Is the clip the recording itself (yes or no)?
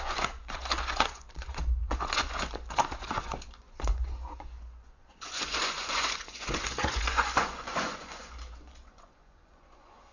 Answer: no